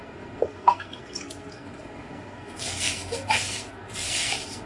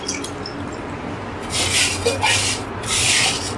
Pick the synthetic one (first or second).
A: first